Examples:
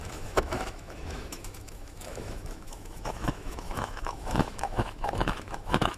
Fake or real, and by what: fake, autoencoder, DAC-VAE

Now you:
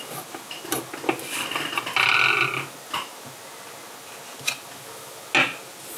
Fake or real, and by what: real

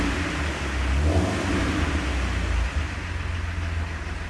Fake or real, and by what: real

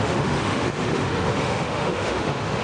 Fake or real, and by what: fake, autoencoder, DAC-VAE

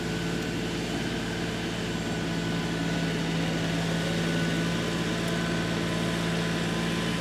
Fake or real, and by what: real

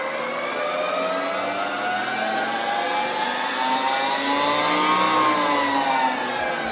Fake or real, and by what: real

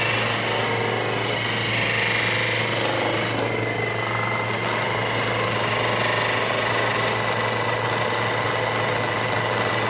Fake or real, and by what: real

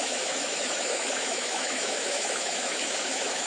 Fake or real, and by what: fake, autoencoder, DAC-VAE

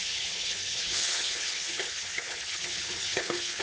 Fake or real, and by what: fake, codec, HILCodec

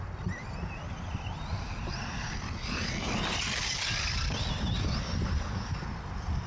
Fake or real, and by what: real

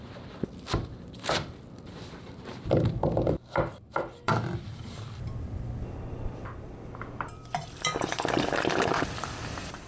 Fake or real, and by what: fake, vocoder, BigVGAN v2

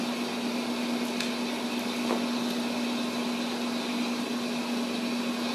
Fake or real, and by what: real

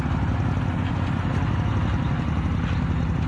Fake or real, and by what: real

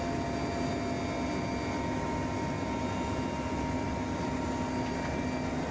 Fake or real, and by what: real